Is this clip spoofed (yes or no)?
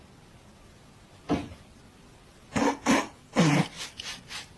no